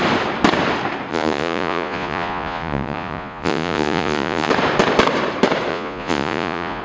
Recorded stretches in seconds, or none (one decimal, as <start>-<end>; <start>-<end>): 0.0-1.1; 4.5-5.7